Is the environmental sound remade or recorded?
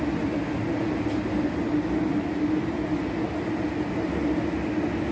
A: recorded